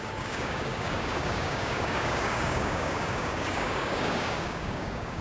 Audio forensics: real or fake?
fake